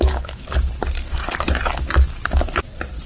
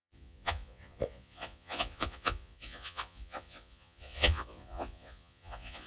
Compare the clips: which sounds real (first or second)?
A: first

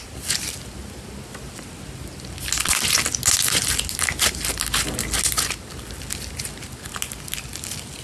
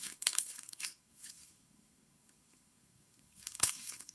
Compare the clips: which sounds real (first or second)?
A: first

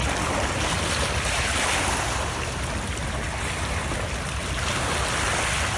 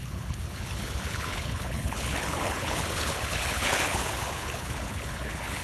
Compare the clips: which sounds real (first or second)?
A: first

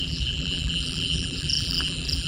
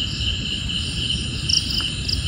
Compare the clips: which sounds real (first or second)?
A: second